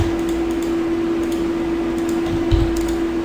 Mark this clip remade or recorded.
recorded